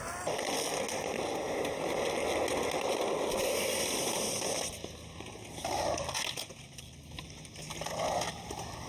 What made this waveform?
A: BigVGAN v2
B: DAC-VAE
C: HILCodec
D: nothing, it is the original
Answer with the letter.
D